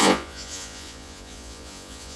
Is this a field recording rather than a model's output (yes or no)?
no